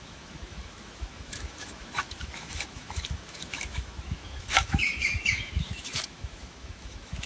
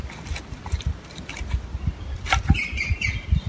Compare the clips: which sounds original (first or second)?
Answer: second